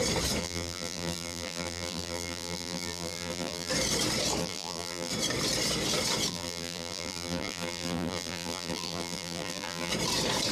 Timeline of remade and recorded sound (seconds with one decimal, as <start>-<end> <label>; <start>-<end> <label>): 0.0-0.4 recorded; 0.4-3.7 remade; 3.7-4.4 recorded; 4.4-5.1 remade; 5.1-6.3 recorded; 6.3-9.9 remade; 9.9-10.5 recorded